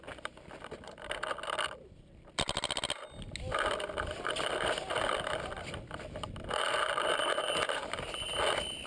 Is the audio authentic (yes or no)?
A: yes